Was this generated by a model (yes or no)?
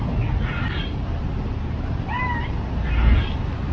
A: no